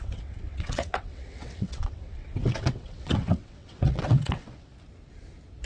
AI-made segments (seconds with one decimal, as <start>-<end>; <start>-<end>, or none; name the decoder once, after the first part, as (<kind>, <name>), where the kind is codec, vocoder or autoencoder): 0.0-4.7 (vocoder, WaveNeXt)